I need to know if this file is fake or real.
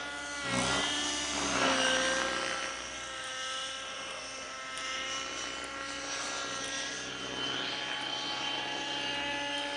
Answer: real